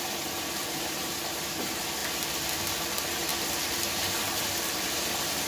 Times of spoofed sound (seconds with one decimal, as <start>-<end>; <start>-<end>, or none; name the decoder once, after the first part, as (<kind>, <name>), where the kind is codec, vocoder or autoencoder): none